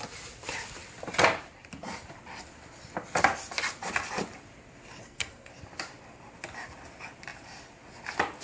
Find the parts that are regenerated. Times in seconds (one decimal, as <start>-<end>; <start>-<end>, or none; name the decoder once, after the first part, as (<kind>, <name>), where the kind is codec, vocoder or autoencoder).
5.0-5.5 (codec, SNAC)